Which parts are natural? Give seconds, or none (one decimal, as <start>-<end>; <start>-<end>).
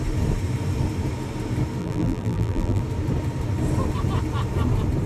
0.0-1.8; 2.8-5.1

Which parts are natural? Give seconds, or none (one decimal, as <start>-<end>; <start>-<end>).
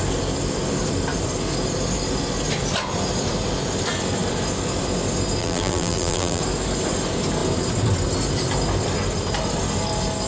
0.0-5.4; 6.4-10.3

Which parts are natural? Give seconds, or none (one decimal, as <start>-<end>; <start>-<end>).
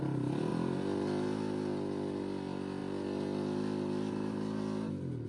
0.0-5.3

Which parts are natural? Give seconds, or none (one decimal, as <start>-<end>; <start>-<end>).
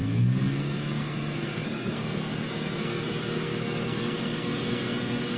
none